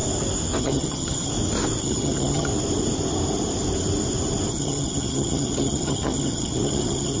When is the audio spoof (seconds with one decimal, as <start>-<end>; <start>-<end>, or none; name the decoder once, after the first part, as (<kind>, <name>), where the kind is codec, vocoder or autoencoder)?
0.6-1.3 (vocoder, HiFi-GAN); 1.8-2.5; 4.5-7.2